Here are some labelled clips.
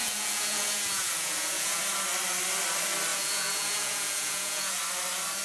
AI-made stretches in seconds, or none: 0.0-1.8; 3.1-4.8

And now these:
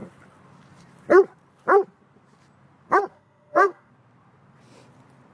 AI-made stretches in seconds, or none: 3.1-3.9

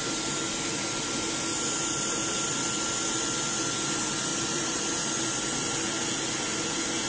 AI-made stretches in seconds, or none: 4.3-4.8

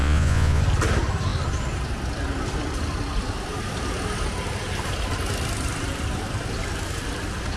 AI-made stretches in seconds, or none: 0.0-0.6

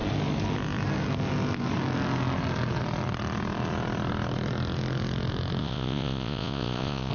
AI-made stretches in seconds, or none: 5.6-7.1

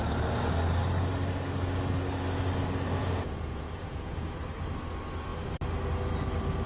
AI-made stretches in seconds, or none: 3.0-4.4

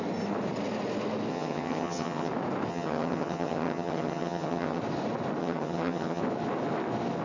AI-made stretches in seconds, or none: 1.3-2.3; 2.7-4.8; 5.4-6.2

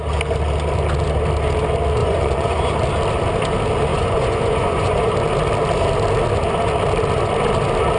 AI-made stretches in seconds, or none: 2.0-2.7; 3.9-5.1